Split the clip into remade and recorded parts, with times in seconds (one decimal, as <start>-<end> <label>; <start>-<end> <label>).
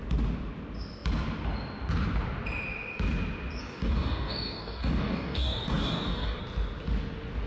0.0-3.6 recorded; 3.6-6.4 remade; 6.4-7.5 recorded